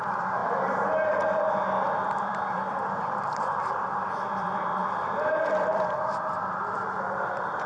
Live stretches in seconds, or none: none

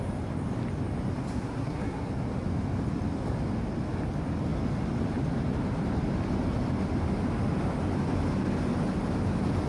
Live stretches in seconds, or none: 0.0-1.3; 2.1-9.7

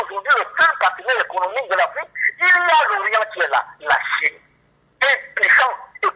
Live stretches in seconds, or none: 0.0-6.2

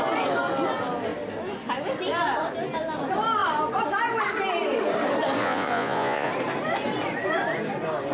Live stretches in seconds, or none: 0.0-5.4; 6.3-8.1

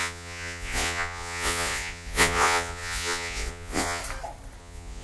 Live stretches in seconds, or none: 4.0-4.6

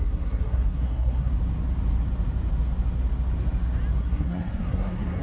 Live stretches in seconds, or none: 1.3-4.0